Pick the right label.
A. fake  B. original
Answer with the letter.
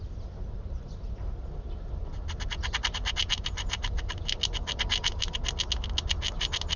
B